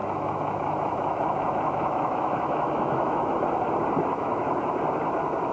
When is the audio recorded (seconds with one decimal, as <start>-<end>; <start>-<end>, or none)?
3.3-4.1; 4.6-5.5